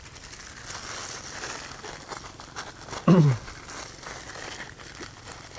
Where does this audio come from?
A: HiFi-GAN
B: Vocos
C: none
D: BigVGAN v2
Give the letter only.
C